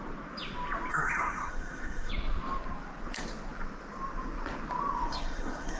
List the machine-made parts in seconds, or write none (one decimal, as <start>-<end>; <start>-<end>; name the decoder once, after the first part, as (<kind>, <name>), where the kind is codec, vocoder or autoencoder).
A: 0.9-2.1 (codec, SNAC); 5.1-5.8